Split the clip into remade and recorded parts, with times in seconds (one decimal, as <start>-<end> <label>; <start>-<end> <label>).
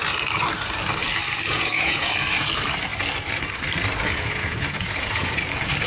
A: 0.0-1.5 recorded; 1.5-2.1 remade; 2.1-4.1 recorded; 4.1-5.4 remade; 5.4-5.9 recorded